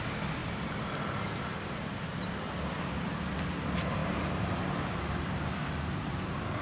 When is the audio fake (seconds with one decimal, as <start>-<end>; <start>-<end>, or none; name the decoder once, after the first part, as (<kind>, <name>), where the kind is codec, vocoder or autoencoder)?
0.4-0.9 (vocoder, BigVGAN v2); 4.0-6.6